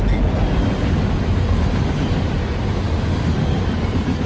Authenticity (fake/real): real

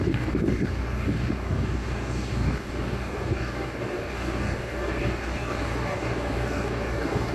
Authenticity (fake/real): fake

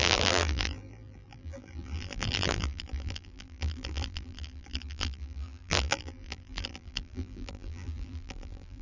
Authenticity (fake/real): fake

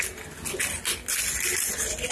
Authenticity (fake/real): real